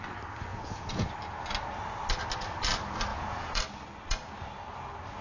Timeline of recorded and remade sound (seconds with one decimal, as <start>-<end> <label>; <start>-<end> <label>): 0.0-0.5 recorded; 0.5-1.1 remade; 1.1-3.1 recorded; 3.1-3.6 remade; 3.6-5.2 recorded